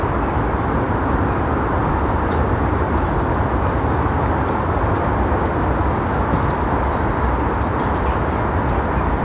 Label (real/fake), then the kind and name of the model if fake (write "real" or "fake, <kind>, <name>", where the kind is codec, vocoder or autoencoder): real